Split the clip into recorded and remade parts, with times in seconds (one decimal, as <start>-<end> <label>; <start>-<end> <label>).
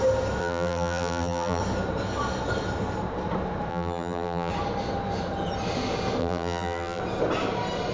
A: 0.0-0.4 recorded; 0.4-1.6 remade; 1.6-3.7 recorded; 3.7-4.5 remade; 4.5-6.2 recorded; 6.2-7.0 remade; 7.0-7.9 recorded